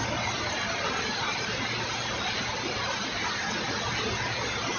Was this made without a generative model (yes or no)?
yes